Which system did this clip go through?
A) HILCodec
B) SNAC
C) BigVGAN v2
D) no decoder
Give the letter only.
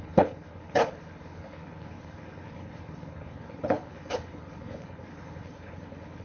A